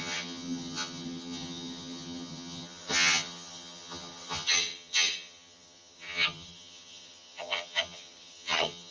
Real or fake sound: fake